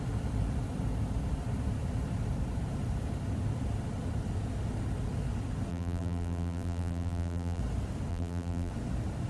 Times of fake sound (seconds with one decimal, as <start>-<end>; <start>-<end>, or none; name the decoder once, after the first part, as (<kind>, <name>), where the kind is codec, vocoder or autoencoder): 5.7-7.6 (vocoder, BigVGAN v2); 8.1-8.7